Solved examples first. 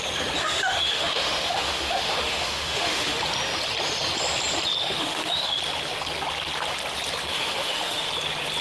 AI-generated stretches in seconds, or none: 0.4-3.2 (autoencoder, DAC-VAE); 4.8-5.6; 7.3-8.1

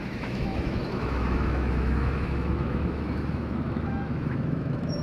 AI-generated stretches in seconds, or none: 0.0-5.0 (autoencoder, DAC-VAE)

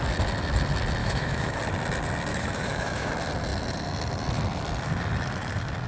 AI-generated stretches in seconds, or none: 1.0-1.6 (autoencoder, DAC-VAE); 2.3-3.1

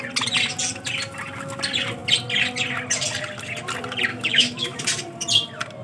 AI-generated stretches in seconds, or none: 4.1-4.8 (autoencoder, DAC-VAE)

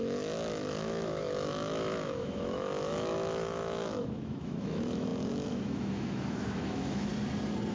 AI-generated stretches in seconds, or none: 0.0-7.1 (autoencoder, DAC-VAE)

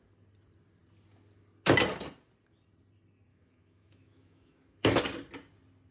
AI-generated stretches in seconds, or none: 3.3-5.0 (autoencoder, DAC-VAE)